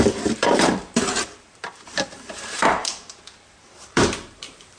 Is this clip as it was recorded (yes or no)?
no